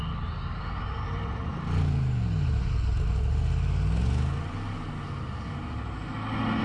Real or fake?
real